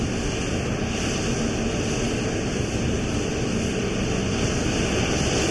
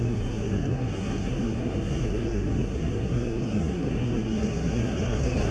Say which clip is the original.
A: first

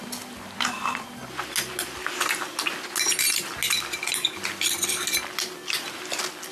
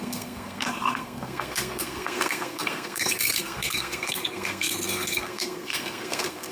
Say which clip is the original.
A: first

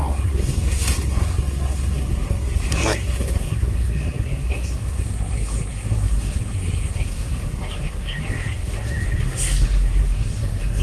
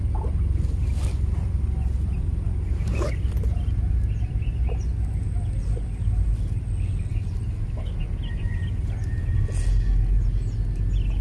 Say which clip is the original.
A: second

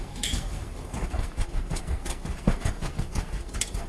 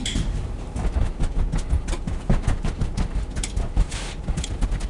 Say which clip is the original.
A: second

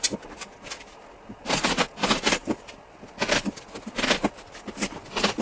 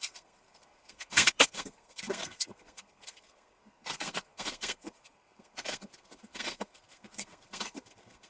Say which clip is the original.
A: first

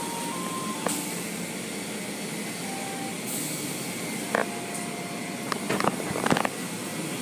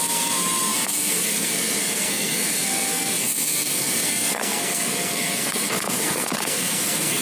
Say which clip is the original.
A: first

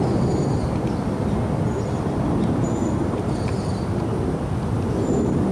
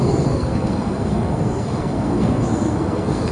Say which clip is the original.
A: first